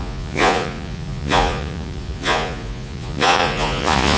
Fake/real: fake